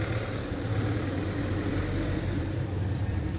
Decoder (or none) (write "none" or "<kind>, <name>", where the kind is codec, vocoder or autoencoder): vocoder, BigVGAN v2